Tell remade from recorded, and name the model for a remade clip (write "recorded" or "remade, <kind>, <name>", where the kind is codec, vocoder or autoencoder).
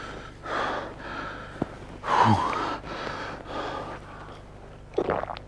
recorded